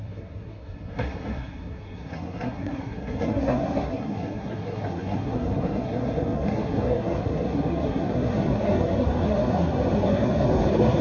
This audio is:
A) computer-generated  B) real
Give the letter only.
A